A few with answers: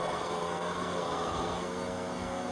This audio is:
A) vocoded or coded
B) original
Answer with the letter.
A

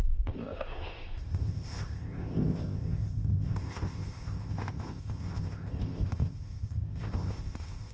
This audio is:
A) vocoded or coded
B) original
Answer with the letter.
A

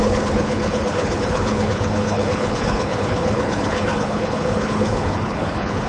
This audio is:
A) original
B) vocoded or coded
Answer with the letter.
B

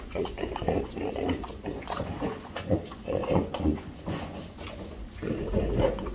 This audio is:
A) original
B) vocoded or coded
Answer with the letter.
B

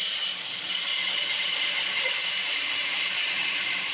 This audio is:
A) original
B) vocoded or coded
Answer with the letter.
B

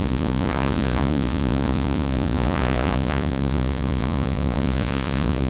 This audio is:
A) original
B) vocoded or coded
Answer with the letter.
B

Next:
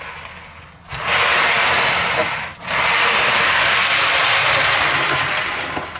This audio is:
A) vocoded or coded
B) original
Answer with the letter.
B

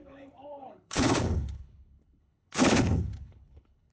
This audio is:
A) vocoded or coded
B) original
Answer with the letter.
A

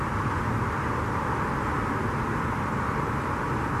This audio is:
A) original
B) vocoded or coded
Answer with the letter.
A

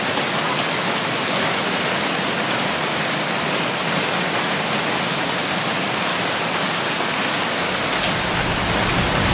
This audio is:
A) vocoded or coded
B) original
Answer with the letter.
B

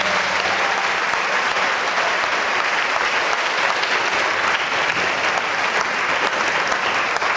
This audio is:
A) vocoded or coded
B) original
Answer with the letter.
B